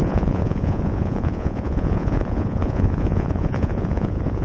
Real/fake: fake